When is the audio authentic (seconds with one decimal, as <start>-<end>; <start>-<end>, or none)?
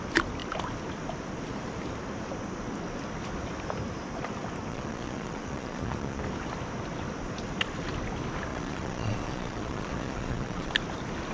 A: 0.0-4.7; 6.2-8.5; 10.7-11.3